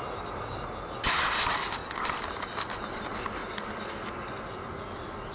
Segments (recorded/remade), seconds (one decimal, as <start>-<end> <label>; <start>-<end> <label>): 0.0-5.3 recorded